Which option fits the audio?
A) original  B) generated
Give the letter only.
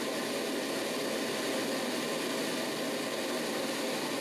A